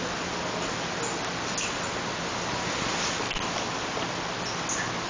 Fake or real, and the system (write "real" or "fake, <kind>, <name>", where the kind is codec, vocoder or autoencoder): real